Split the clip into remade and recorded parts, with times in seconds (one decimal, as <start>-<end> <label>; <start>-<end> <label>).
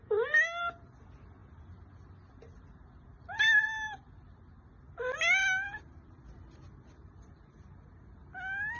0.0-8.8 recorded